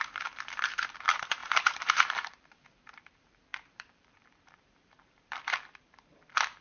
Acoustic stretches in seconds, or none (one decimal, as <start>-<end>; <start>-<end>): none